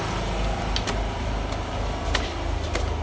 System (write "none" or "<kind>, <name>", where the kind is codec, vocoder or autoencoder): none